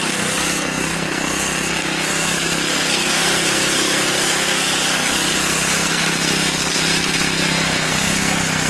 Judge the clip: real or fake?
fake